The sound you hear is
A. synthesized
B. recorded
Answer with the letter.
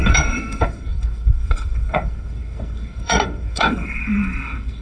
A